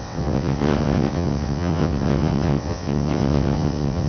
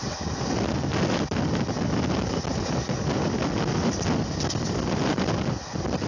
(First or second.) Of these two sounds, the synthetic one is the first